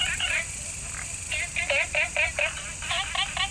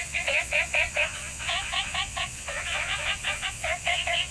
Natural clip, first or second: first